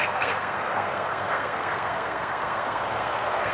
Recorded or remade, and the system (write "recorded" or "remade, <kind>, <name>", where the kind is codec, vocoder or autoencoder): remade, codec, SNAC